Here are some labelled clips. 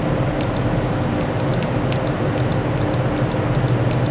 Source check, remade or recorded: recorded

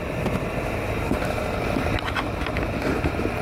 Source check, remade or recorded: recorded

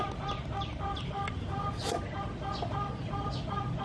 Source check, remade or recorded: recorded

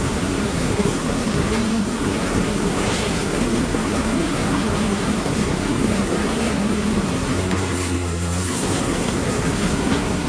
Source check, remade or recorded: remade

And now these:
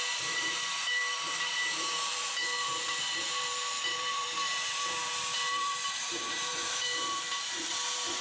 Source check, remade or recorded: remade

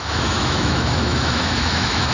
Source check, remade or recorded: remade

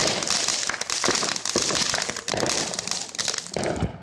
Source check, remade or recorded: recorded